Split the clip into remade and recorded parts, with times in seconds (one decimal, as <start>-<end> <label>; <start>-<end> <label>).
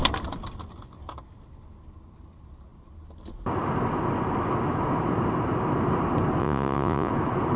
0.0-6.4 recorded; 6.4-7.1 remade; 7.1-7.6 recorded